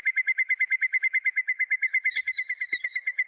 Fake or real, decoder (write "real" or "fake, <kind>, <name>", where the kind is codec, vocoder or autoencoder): fake, autoencoder, DAC-VAE